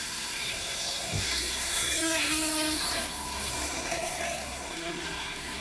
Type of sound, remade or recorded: remade